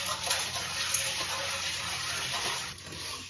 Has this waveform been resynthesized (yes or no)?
no